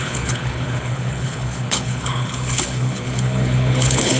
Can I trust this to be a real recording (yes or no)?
no